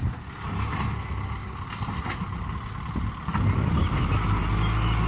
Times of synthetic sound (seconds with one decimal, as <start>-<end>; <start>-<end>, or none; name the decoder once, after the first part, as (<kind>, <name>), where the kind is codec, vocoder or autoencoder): none